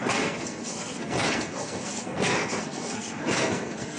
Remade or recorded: remade